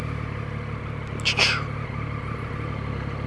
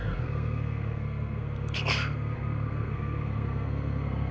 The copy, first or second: second